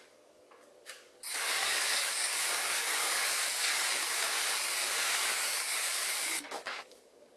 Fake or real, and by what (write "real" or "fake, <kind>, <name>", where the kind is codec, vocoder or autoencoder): fake, codec, DAC